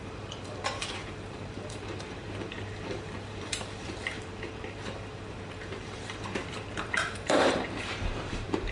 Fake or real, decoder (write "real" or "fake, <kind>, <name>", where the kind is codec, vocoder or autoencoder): fake, vocoder, BigVGAN v2